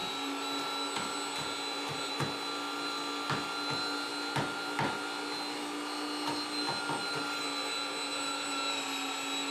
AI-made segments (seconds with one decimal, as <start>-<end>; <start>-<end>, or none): none